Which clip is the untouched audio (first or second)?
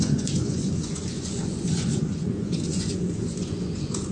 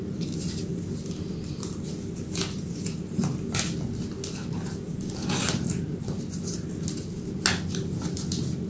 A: second